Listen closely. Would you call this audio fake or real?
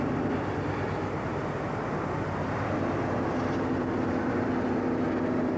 real